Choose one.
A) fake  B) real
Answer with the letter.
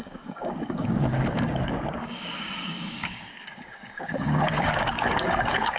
A